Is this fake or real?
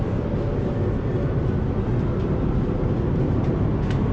real